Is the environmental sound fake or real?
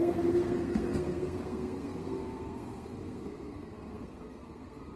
fake